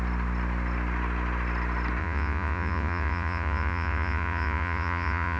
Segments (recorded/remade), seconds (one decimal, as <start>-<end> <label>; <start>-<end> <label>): 0.0-2.0 recorded; 2.0-5.4 remade